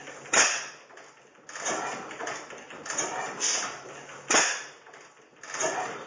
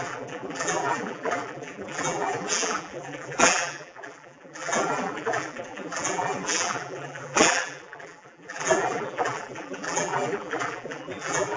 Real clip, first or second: first